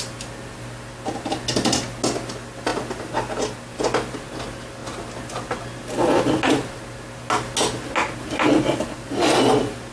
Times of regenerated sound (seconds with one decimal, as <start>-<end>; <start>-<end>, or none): none